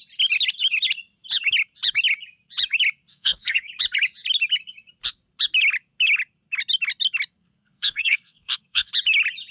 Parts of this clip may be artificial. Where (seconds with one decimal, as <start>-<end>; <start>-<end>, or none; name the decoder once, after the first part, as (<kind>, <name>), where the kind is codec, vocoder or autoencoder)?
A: 3.1-3.7 (codec, SNAC); 7.4-8.9